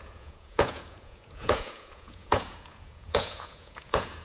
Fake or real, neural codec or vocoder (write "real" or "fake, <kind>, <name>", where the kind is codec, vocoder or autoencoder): fake, vocoder, Vocos